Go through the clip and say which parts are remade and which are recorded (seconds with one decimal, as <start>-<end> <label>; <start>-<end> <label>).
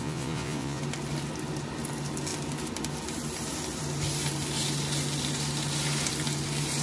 0.0-0.8 remade; 0.8-6.8 recorded